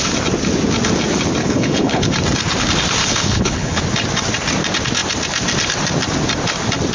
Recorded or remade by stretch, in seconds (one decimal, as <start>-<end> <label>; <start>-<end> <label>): 0.0-1.4 recorded; 1.4-2.1 remade; 2.1-3.0 recorded; 3.0-3.8 remade; 3.8-6.9 recorded